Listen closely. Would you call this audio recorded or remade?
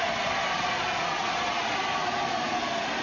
recorded